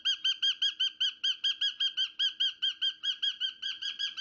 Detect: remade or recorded recorded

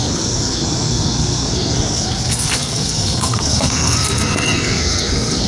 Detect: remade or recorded remade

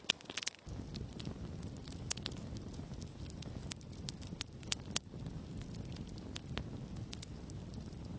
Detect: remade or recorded recorded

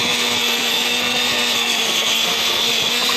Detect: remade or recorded remade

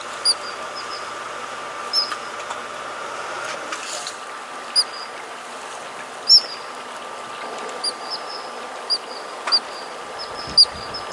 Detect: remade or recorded recorded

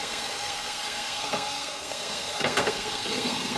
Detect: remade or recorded remade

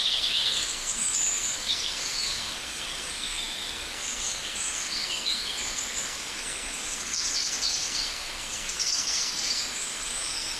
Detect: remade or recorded remade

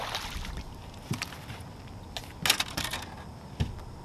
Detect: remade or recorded recorded